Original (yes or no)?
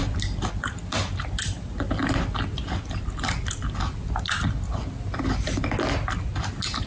yes